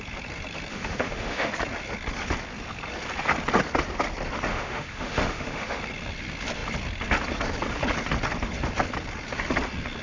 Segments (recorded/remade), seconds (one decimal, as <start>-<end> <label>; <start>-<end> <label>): 0.0-0.7 recorded; 0.7-1.5 remade; 1.5-4.5 recorded; 4.5-5.8 remade; 5.8-10.0 recorded